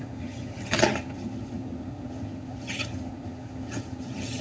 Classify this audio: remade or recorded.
remade